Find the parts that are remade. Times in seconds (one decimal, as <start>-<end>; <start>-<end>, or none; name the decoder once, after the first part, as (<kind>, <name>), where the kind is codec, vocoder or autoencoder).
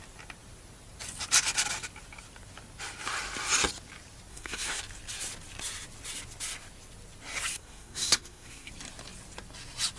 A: 4.3-4.8 (codec, SNAC); 7.5-8.7